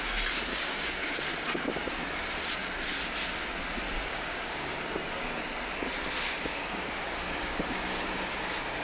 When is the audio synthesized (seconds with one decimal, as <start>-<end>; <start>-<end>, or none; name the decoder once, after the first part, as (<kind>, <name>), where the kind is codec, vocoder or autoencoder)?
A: 0.5-1.2 (codec, DAC); 4.1-5.4; 6.5-8.8